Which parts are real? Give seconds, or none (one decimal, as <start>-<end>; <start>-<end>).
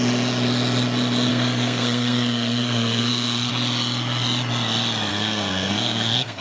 0.0-1.3; 3.5-5.1